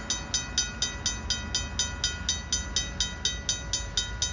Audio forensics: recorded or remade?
recorded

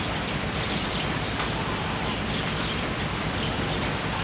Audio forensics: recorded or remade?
remade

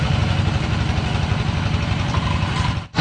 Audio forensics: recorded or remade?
recorded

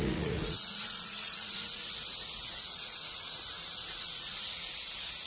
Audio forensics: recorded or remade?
remade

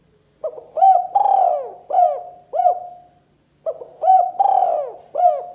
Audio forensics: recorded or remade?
recorded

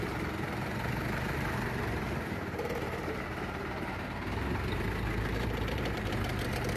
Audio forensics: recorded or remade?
remade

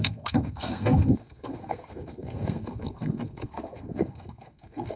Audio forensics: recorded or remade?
remade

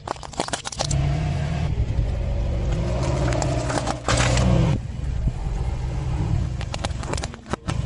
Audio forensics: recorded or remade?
remade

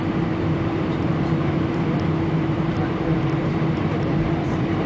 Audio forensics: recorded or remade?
remade